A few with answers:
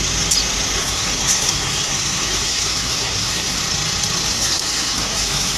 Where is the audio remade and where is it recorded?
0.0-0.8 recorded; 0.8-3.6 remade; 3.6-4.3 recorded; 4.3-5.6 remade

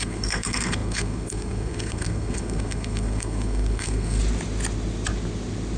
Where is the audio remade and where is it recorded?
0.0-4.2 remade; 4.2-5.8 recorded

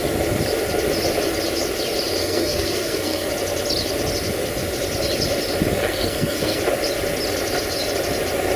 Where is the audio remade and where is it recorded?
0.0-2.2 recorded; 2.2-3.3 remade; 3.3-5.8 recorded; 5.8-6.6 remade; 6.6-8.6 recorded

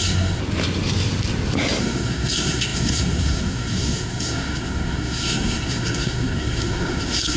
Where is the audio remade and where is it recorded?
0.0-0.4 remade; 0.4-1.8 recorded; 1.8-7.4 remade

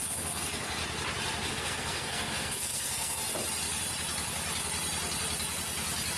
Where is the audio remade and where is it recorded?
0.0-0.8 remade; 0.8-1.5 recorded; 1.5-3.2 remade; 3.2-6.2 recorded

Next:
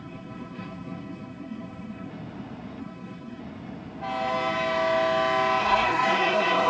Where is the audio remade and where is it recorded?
0.0-2.1 remade; 2.1-2.8 recorded; 2.8-3.4 remade; 3.4-5.6 recorded; 5.6-6.7 remade